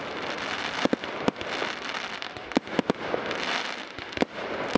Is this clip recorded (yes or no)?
yes